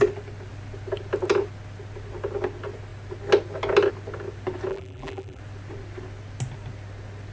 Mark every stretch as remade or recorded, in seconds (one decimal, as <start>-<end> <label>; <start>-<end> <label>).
0.0-4.7 recorded; 4.7-5.4 remade; 5.4-7.3 recorded